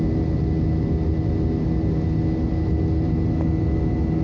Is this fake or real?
real